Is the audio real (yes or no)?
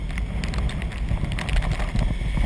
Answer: yes